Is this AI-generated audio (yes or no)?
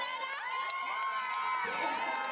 no